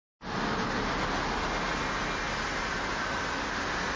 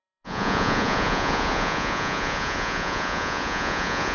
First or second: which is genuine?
first